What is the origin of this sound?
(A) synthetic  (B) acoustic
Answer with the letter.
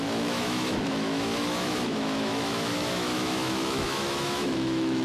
A